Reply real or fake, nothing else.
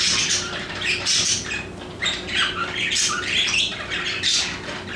fake